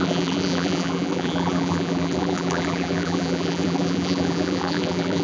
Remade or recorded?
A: remade